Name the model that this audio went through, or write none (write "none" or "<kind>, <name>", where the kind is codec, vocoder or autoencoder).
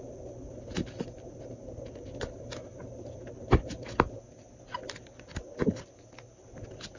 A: none